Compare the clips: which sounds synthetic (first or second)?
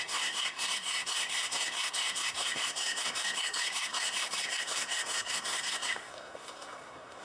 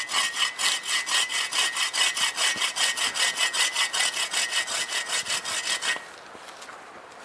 first